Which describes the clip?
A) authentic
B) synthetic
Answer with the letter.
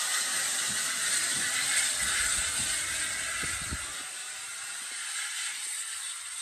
A